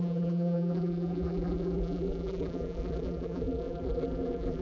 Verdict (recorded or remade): remade